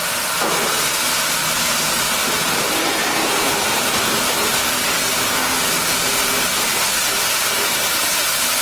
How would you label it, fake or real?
real